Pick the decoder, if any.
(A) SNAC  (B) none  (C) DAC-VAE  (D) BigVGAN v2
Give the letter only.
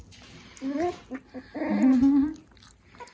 B